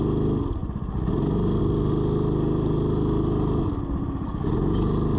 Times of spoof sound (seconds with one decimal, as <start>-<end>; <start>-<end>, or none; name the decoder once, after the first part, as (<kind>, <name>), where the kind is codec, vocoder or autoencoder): none